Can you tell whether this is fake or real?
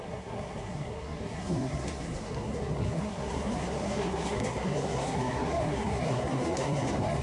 fake